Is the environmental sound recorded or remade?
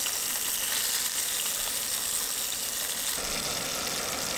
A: recorded